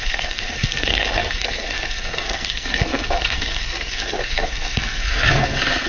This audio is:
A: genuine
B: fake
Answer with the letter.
B